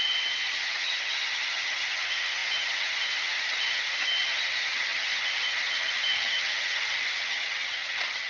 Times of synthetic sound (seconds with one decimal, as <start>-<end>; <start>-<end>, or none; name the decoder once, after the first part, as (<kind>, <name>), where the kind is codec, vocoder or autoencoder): 0.0-8.3 (vocoder, HiFi-GAN)